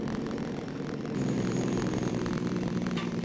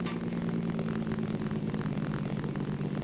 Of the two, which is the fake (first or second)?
first